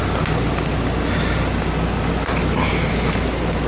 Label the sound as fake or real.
real